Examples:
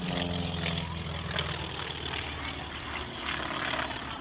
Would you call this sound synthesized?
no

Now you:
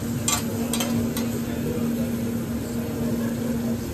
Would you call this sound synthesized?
no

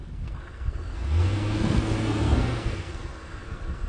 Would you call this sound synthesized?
yes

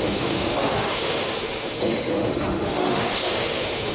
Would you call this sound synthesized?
yes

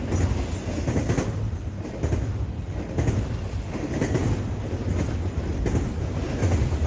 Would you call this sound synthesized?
no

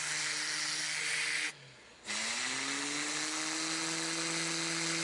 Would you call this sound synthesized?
no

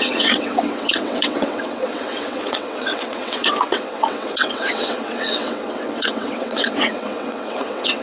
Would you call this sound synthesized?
yes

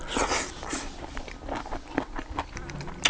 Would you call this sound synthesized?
no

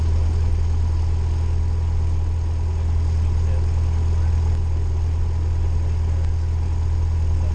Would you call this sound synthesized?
no